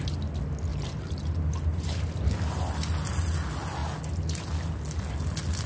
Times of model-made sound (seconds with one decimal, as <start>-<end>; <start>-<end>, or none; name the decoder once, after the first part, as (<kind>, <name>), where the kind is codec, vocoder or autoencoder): none